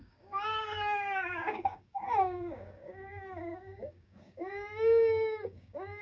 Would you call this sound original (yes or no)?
no